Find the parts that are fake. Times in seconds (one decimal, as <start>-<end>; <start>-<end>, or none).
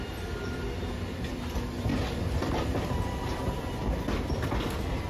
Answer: none